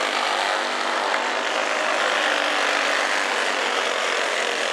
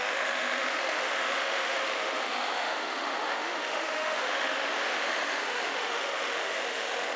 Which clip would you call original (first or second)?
first